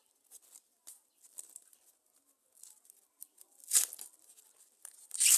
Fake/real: real